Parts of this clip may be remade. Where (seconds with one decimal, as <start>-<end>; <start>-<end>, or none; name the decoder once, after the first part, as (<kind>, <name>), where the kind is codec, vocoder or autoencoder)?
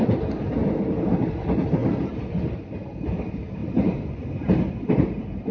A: 1.8-2.4 (vocoder, BigVGAN v2); 3.6-4.7